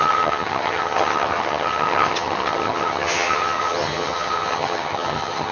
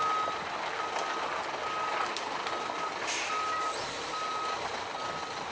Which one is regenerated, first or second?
first